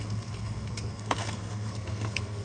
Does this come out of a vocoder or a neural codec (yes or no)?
yes